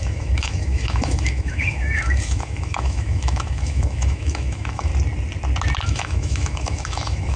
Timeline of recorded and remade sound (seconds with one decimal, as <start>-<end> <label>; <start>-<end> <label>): 0.0-4.9 remade; 4.9-5.8 recorded; 5.8-7.4 remade